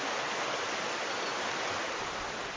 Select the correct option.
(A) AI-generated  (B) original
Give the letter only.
B